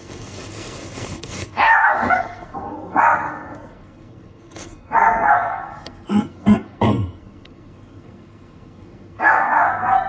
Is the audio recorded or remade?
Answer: remade